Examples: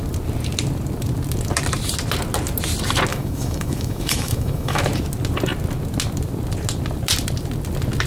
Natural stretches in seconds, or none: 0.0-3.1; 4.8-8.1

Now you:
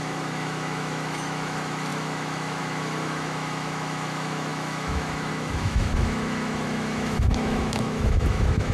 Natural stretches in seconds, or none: none

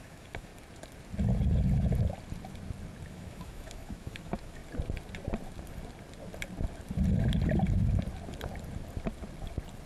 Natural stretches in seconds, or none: 0.5-3.1; 4.6-9.9

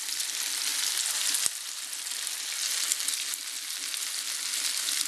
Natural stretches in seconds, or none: 0.0-5.1

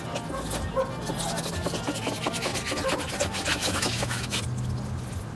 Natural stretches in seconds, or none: 0.0-3.5; 4.4-5.4

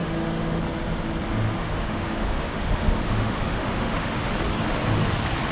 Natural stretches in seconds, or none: 0.6-1.6; 4.3-5.5

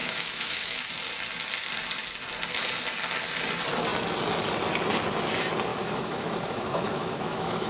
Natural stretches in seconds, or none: 0.9-5.7